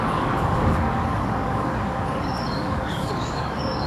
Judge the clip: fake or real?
fake